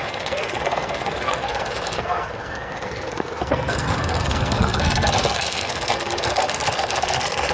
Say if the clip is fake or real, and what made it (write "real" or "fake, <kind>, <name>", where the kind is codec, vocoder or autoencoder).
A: fake, codec, SNAC